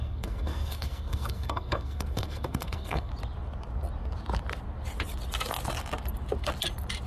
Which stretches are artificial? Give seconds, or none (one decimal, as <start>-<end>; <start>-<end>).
0.0-3.1